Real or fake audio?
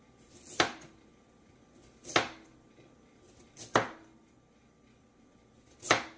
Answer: real